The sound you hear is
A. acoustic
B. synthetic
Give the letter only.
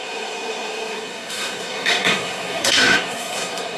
B